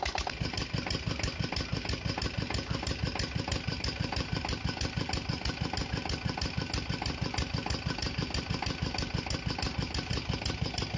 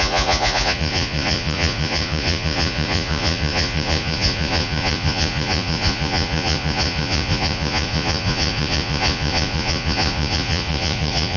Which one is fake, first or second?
second